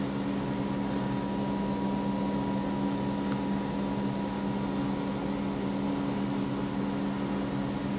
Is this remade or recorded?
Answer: recorded